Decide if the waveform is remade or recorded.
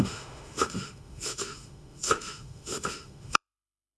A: remade